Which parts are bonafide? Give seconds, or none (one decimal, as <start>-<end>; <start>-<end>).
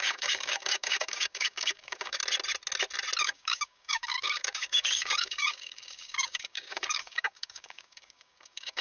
2.2-3.2